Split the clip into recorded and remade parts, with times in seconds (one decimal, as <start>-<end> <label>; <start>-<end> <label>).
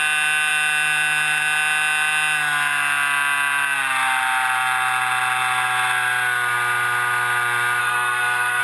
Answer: 0.0-7.8 recorded; 7.8-8.6 remade